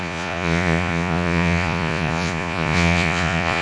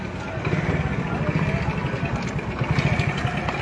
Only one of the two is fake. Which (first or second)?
first